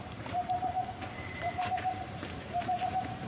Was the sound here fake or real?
fake